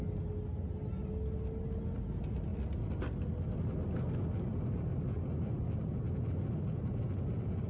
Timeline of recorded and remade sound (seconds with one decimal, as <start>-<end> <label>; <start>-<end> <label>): 0.0-7.7 recorded